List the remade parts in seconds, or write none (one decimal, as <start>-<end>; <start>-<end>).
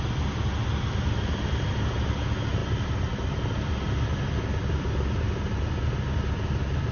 none